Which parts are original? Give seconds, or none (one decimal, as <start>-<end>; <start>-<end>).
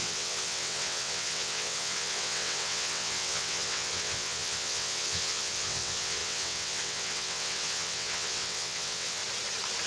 9.2-9.9